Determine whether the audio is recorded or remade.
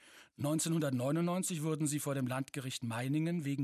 recorded